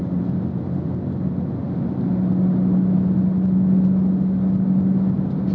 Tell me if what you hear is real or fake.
real